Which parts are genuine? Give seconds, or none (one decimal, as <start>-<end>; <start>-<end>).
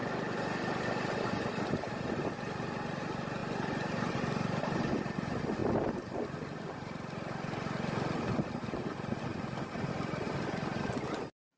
0.0-11.6